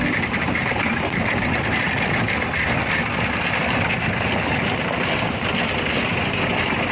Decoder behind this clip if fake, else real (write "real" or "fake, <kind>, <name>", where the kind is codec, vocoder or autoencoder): real